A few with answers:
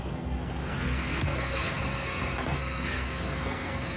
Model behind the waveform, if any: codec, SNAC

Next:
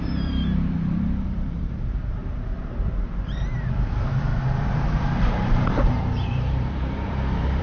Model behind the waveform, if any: vocoder, BigVGAN v2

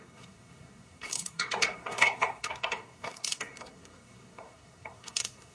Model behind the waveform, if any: codec, SNAC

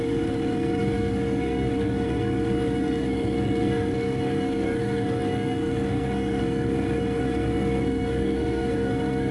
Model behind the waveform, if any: codec, SNAC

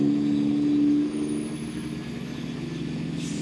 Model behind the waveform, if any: none